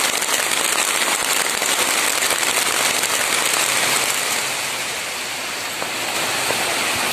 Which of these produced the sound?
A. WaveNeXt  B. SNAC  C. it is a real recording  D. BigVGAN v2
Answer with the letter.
C